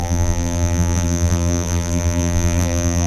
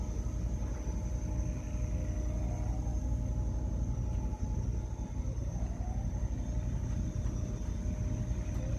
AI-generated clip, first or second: first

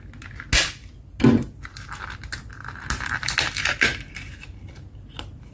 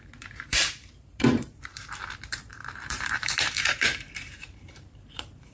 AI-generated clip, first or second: second